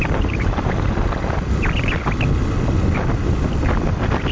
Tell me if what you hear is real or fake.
real